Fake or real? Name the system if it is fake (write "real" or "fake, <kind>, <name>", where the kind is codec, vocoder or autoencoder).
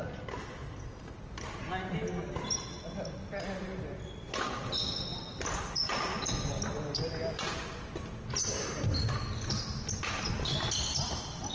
real